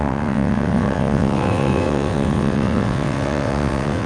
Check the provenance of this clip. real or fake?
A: fake